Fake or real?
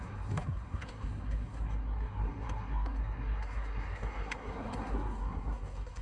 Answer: fake